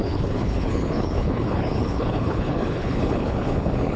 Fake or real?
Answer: fake